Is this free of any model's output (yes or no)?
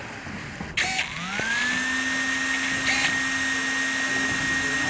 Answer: yes